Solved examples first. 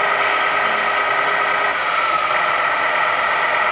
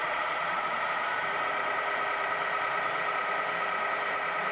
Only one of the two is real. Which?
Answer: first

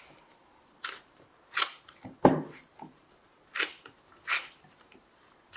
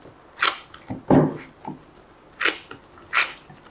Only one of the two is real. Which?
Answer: second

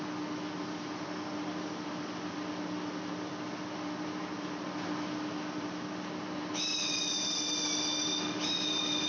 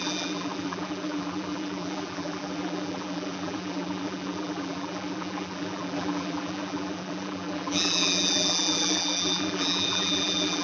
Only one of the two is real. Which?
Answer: first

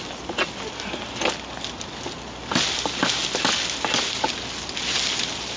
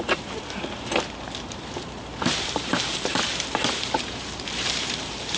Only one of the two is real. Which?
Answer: first